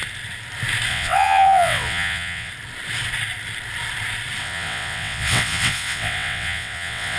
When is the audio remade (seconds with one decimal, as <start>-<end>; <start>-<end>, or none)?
0.9-2.5; 4.4-7.2

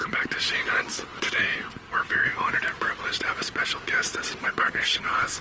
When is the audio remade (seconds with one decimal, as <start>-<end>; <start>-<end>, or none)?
4.4-5.4

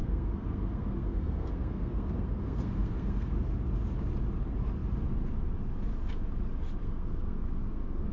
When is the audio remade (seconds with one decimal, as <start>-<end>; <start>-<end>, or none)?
0.0-3.3; 6.8-8.1

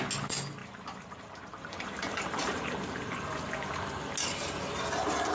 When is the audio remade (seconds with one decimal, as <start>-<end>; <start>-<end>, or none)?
0.6-3.5

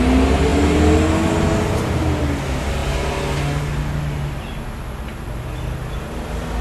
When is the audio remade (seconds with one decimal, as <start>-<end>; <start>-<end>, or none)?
none

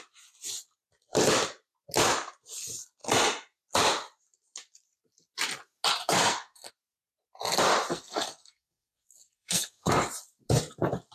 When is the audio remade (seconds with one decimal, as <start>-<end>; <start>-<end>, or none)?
6.0-6.7; 7.9-9.9

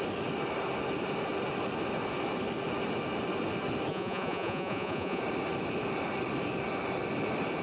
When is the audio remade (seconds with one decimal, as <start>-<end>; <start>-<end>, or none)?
3.9-5.2